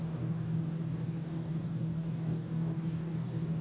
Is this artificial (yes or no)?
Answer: yes